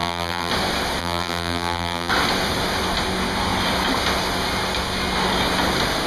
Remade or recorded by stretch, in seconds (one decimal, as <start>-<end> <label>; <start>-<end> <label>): 0.0-0.5 remade; 0.5-1.0 recorded; 1.0-2.1 remade; 2.1-6.1 recorded